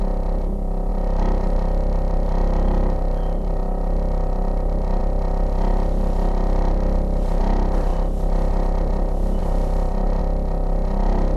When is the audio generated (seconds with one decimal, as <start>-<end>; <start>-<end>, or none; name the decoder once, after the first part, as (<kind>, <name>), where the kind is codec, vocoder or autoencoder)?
0.9-5.0 (vocoder, BigVGAN v2); 5.7-7.4; 9.4-10.2